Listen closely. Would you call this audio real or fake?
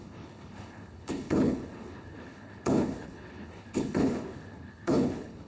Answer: fake